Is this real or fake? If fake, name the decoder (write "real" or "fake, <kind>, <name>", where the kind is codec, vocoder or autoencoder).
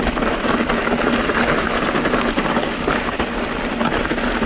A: real